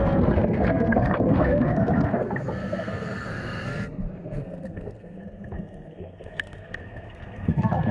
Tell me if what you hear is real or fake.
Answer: fake